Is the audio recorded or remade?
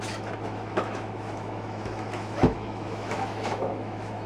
remade